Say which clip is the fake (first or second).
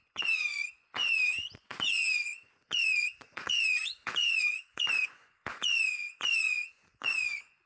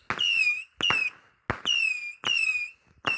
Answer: first